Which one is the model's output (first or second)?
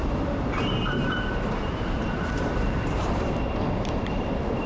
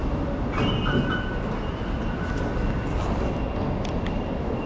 first